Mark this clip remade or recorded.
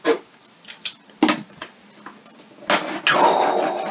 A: recorded